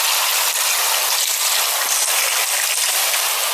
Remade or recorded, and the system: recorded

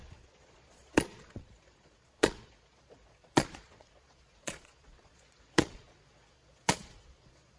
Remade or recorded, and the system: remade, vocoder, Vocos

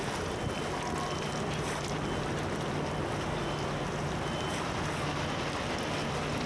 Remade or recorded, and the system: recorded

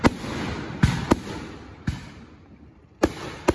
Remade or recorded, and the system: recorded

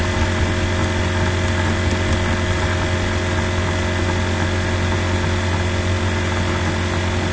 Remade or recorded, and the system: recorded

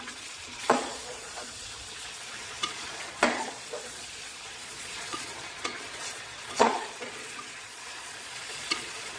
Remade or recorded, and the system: remade, vocoder, Vocos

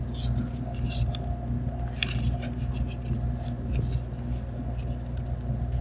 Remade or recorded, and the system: recorded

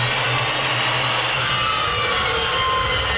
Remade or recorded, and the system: recorded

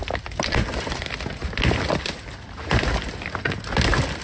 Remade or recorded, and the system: recorded